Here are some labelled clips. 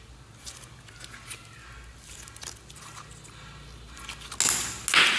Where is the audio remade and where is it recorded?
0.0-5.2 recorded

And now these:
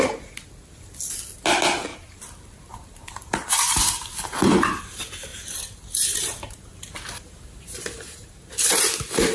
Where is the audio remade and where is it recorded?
0.0-1.9 recorded; 1.9-4.8 remade; 4.8-5.3 recorded; 5.3-8.8 remade; 8.8-9.3 recorded

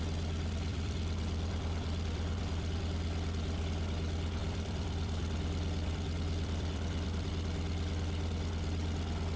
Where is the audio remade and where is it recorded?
0.0-0.7 recorded; 0.7-2.8 remade; 2.8-4.4 recorded; 4.4-7.3 remade; 7.3-9.4 recorded

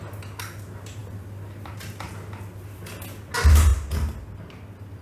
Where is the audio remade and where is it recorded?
0.0-5.0 recorded

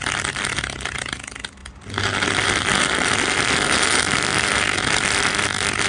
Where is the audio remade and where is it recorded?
0.0-5.9 recorded

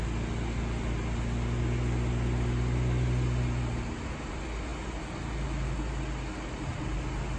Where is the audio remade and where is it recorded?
0.0-7.4 recorded

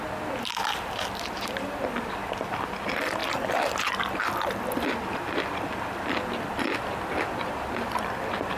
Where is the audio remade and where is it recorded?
0.0-3.2 remade; 3.2-4.2 recorded; 4.2-8.6 remade